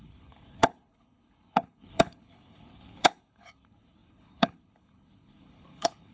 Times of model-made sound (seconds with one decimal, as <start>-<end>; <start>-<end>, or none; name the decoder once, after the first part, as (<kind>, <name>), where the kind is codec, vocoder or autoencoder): 0.0-6.1 (codec, HILCodec)